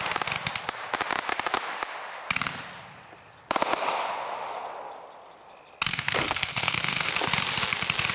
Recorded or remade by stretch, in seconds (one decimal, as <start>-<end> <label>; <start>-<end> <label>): 0.0-5.9 recorded; 5.9-7.1 remade; 7.1-8.1 recorded